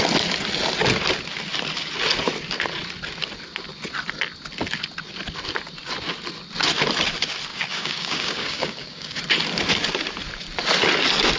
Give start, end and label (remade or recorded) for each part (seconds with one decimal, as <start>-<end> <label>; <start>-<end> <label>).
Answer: 0.0-7.5 recorded; 7.5-9.2 remade; 9.2-11.4 recorded